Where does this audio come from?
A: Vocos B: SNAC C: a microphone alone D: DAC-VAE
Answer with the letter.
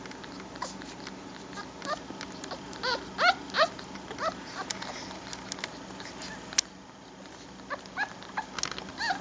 C